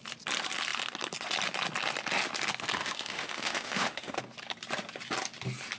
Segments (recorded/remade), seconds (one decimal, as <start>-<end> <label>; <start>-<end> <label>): 0.0-2.8 recorded; 2.8-4.2 remade; 4.2-5.8 recorded